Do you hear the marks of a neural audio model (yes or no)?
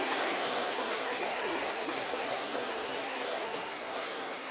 yes